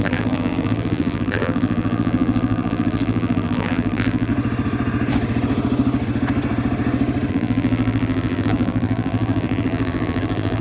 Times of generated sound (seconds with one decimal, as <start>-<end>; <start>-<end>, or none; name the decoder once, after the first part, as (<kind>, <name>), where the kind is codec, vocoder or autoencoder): 0.0-4.3 (vocoder, BigVGAN v2); 7.3-10.6